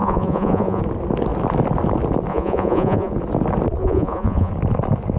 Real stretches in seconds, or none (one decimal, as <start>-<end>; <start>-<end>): 0.8-2.3; 3.1-3.8; 4.5-5.2